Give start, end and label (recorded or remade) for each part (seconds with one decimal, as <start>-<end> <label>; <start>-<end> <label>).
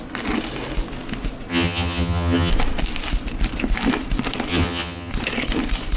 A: 0.0-1.5 recorded; 1.5-2.5 remade; 2.5-4.5 recorded; 4.5-5.1 remade; 5.1-6.0 recorded